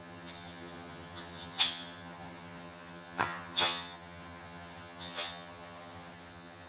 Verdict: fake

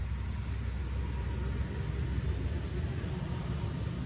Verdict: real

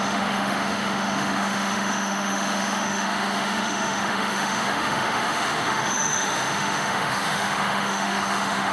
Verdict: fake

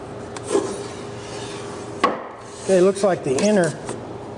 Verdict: real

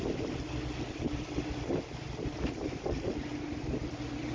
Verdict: real